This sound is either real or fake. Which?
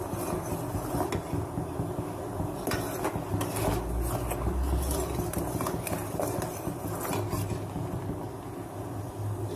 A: real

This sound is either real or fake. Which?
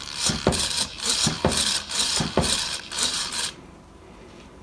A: fake